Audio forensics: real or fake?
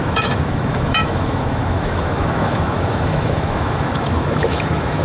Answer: fake